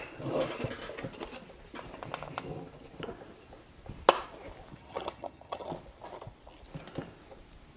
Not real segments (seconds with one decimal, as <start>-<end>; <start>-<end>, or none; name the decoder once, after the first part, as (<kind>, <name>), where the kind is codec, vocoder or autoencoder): 4.7-5.7 (vocoder, HiFi-GAN)